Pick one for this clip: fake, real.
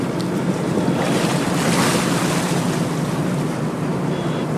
real